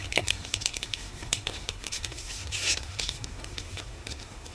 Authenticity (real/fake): fake